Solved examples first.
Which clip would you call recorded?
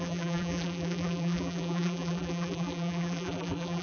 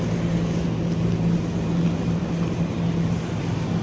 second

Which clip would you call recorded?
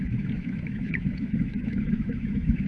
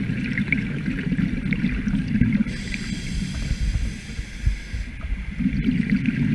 second